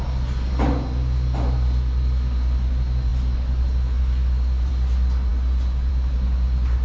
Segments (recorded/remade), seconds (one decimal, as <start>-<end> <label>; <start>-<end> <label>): 0.0-6.8 recorded